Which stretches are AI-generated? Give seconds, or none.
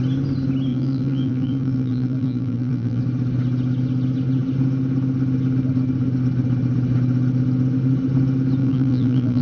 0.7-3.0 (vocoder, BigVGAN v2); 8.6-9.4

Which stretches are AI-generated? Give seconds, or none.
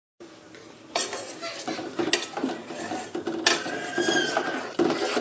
none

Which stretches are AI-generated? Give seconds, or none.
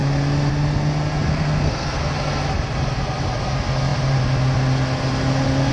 1.3-2.1 (codec, SNAC)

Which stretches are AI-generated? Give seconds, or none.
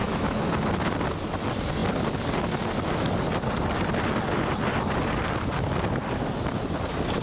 0.0-0.5 (autoencoder, DAC-VAE)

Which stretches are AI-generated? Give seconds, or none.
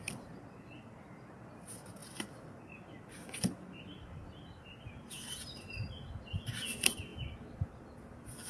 7.1-7.8 (vocoder, BigVGAN v2)